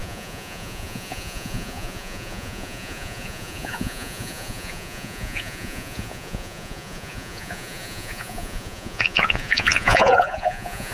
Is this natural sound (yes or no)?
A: no